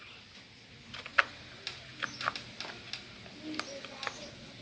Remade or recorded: recorded